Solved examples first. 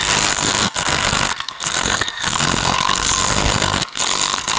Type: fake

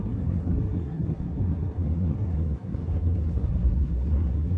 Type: fake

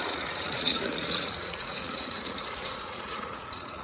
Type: fake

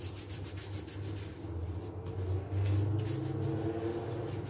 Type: real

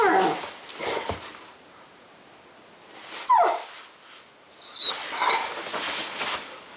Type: real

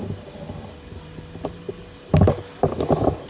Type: real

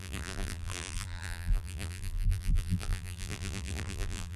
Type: fake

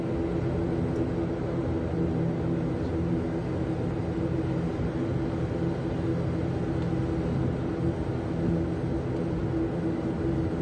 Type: real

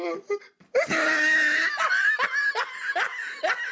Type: real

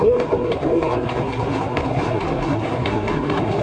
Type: fake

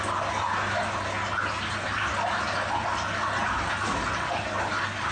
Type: real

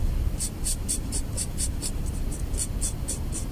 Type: fake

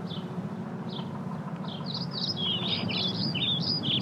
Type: real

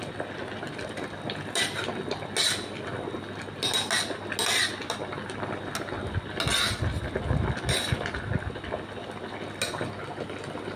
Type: real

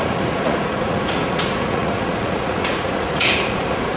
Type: fake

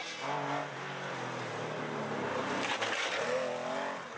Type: real